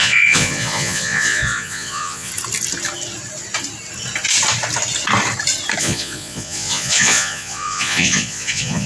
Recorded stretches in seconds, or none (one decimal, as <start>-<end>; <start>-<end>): 2.3-5.8